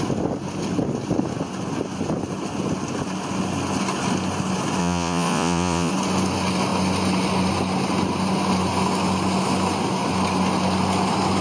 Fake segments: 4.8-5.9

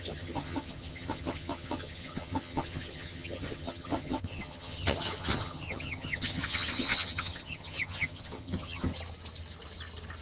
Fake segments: 0.0-8.9

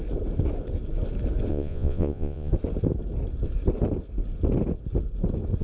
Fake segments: 1.5-2.5